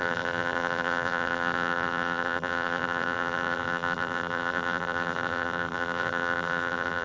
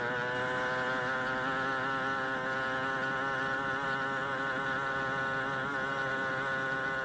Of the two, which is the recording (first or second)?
second